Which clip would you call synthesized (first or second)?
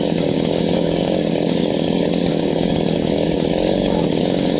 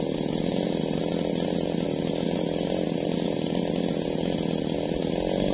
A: first